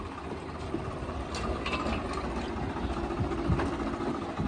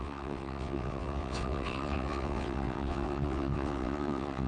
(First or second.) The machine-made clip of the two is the second